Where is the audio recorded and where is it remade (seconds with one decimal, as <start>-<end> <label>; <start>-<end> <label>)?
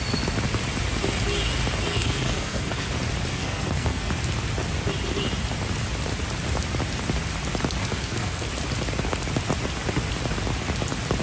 0.0-1.9 recorded; 1.9-2.9 remade; 2.9-3.3 recorded; 3.3-4.1 remade; 4.1-7.8 recorded; 7.8-8.5 remade; 8.5-11.2 recorded